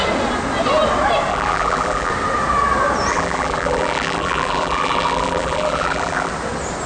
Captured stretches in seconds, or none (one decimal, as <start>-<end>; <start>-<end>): 0.0-1.3; 2.1-3.1; 6.3-6.9